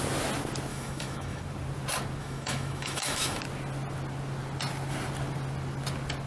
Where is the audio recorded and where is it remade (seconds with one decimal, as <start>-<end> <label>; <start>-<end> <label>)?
0.0-0.7 recorded; 0.7-1.4 remade; 1.4-2.2 recorded; 2.2-3.4 remade; 3.4-6.3 recorded